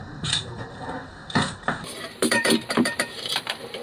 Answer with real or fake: fake